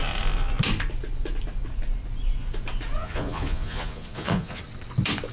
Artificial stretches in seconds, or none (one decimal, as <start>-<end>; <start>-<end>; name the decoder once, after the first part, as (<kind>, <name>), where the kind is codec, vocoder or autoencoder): 3.0-4.6 (vocoder, Vocos)